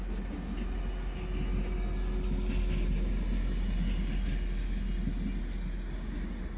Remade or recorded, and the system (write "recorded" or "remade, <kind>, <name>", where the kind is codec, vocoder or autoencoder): recorded